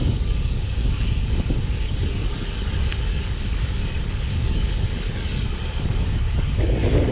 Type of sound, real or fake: fake